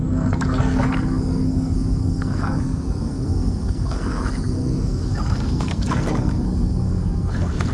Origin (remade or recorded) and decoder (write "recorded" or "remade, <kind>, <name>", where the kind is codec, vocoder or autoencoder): remade, codec, SNAC